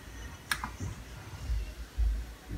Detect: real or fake real